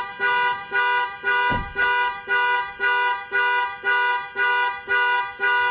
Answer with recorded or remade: recorded